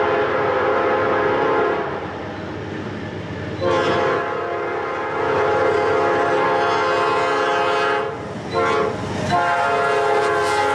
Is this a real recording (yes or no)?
yes